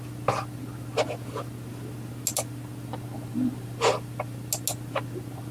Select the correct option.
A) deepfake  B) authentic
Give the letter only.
B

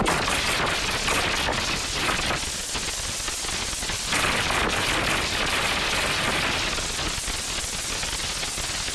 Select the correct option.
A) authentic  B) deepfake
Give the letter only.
A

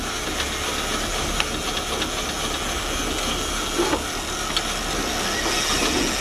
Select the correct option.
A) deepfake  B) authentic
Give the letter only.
B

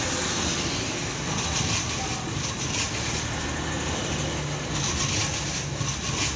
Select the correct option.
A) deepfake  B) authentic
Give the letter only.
B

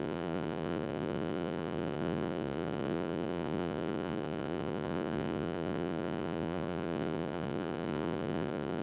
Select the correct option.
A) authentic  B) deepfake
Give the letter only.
B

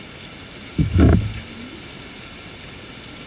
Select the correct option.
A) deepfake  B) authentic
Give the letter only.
B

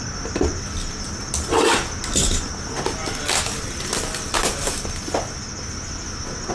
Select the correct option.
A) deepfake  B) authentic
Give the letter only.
B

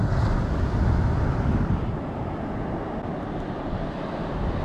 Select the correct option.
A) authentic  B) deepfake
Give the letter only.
A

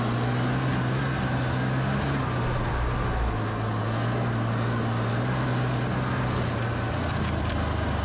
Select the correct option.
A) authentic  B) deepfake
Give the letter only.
A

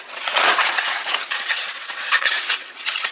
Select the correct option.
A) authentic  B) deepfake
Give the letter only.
B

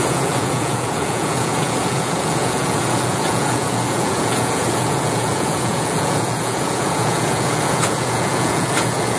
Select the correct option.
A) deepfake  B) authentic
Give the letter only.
A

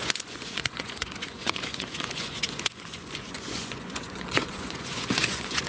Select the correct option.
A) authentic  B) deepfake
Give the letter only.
B